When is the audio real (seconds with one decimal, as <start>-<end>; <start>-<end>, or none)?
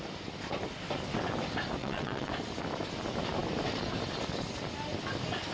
0.0-1.8; 2.3-5.5